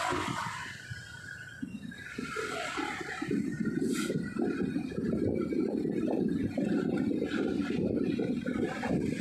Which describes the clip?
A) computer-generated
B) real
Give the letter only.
A